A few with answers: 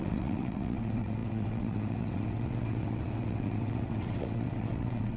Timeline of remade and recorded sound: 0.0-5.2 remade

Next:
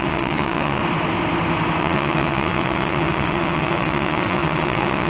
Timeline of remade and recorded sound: 0.0-0.8 remade; 0.8-1.8 recorded; 1.8-5.1 remade

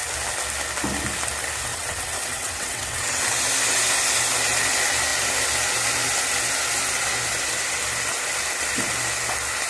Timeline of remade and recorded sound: 0.0-1.7 recorded; 1.7-3.2 remade; 3.2-9.7 recorded

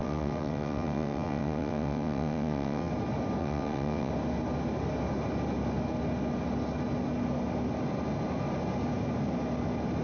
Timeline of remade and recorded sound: 0.0-2.9 remade; 2.9-3.4 recorded; 3.4-4.1 remade; 4.1-10.0 recorded

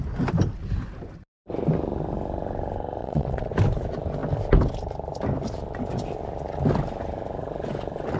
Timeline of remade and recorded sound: 0.0-3.0 recorded; 3.0-3.5 remade; 3.5-8.2 recorded

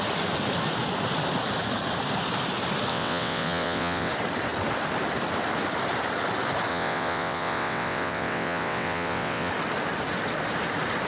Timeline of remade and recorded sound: 0.0-2.9 recorded; 2.9-4.1 remade; 4.1-6.7 recorded; 6.7-9.5 remade; 9.5-11.1 recorded